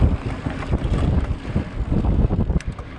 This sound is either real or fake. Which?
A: real